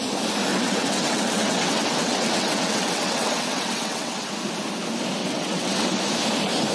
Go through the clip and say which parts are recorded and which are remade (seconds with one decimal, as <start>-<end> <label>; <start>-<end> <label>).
0.0-0.5 recorded; 0.5-4.2 remade; 4.2-5.2 recorded; 5.2-6.0 remade; 6.0-6.7 recorded